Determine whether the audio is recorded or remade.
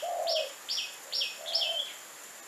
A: recorded